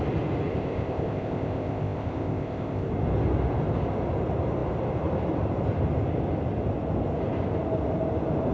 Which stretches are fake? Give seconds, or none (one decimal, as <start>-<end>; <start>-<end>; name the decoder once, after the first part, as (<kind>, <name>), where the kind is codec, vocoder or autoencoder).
0.5-2.9 (codec, ZipCodec)